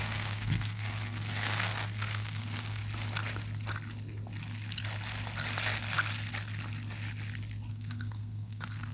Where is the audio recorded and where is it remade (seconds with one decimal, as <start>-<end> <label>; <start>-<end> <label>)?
0.0-2.8 remade; 2.8-7.7 recorded; 7.7-8.9 remade

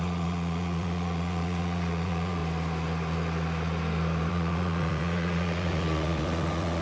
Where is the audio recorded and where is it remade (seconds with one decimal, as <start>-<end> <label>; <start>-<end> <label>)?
0.0-2.4 remade; 2.4-4.3 recorded; 4.3-6.8 remade